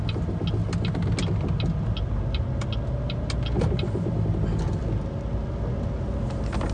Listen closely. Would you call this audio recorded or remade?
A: recorded